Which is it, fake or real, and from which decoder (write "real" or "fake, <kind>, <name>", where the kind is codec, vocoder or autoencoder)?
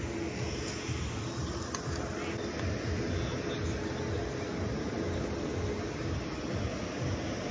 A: real